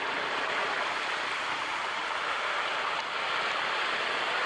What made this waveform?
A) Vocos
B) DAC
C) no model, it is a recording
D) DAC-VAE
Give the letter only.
C